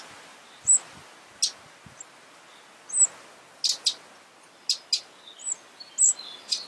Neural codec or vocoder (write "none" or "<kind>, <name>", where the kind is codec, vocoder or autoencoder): none